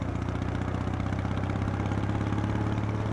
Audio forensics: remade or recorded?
recorded